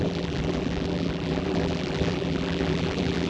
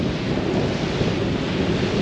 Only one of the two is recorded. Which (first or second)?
second